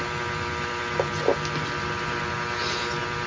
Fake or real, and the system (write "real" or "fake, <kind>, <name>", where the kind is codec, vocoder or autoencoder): real